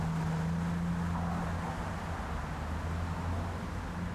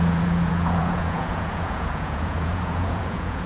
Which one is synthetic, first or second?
second